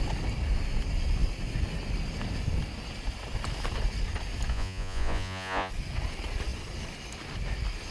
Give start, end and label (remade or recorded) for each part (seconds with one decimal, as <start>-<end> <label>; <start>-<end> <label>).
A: 0.0-4.5 recorded; 4.5-5.7 remade; 5.7-7.9 recorded